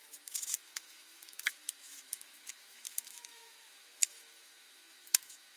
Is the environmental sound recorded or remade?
remade